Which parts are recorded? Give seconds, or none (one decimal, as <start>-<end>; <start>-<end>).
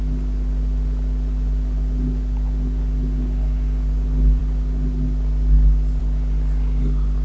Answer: 0.0-7.2